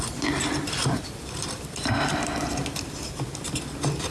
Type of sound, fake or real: real